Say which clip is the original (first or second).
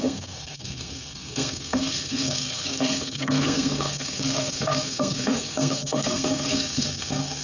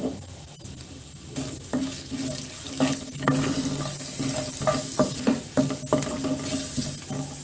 second